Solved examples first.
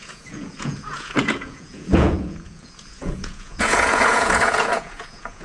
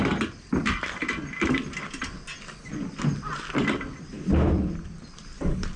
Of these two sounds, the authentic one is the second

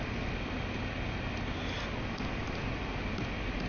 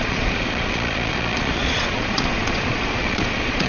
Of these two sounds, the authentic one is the first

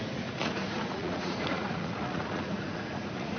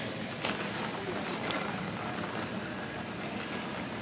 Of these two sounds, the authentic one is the second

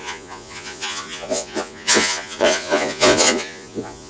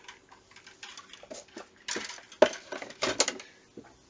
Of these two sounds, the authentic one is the second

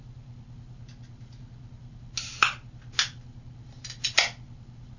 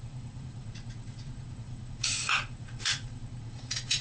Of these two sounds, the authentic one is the first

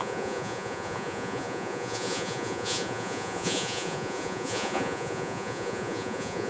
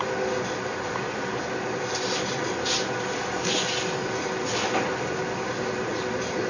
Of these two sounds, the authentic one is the second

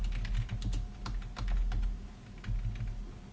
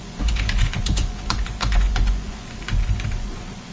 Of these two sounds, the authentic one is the first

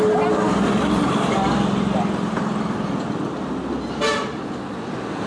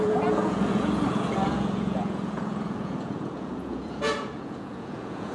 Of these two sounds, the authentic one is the first